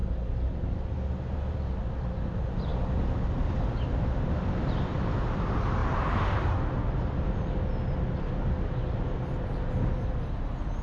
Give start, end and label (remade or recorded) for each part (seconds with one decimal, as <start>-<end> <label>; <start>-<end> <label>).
0.0-1.1 remade; 1.1-10.8 recorded